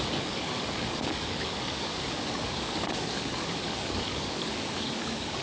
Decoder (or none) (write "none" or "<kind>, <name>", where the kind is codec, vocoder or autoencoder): codec, DAC